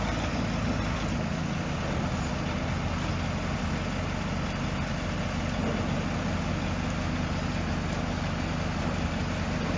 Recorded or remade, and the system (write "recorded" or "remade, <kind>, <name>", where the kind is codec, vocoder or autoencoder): recorded